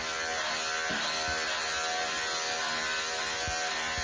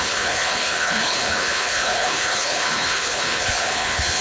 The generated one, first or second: second